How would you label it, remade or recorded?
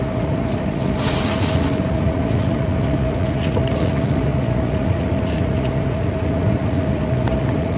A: remade